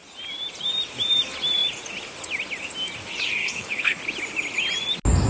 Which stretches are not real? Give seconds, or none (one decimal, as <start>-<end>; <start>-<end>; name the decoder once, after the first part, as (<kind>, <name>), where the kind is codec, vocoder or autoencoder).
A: 3.4-4.0 (codec, HILCodec)